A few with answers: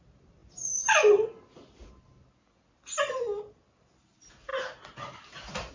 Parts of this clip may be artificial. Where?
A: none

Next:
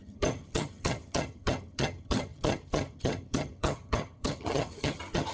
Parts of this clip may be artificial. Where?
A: 0.0-5.3

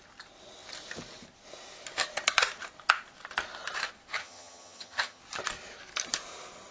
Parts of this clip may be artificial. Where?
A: 4.2-5.2

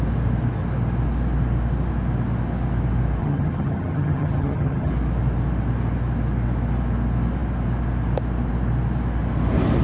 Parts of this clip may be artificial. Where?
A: 3.2-4.9

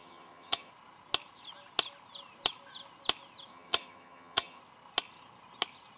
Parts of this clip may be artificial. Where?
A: 0.0-0.7; 3.5-4.6